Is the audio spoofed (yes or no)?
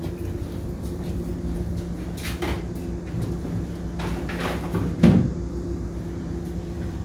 no